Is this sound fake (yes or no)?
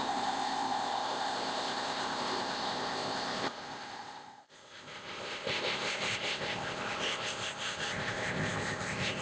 yes